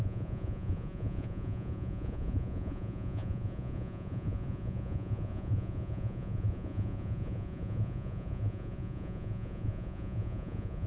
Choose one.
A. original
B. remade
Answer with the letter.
B